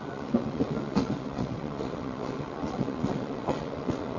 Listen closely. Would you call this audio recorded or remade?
remade